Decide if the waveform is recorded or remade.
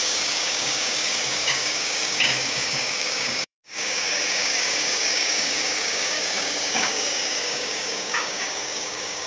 remade